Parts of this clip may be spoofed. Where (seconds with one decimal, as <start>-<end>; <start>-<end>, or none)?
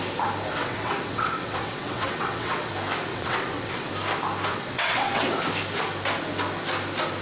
0.6-2.7; 3.1-3.9; 4.5-5.3